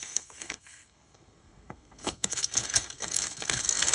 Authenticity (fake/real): fake